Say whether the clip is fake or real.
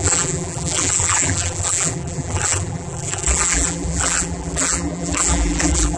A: fake